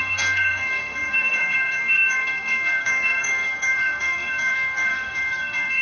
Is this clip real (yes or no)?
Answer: no